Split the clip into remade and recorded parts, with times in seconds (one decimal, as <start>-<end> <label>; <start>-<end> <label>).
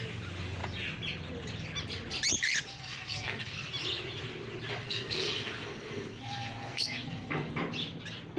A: 0.0-2.7 recorded; 2.7-3.7 remade; 3.7-4.8 recorded; 4.8-7.5 remade; 7.5-8.4 recorded